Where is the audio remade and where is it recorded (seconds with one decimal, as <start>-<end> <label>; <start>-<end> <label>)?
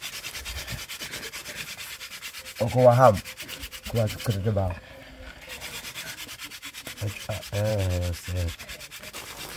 0.0-7.7 recorded; 7.7-8.6 remade; 8.6-9.6 recorded